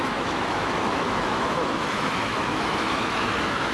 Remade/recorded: remade